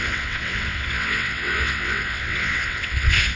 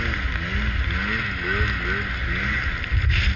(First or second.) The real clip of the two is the second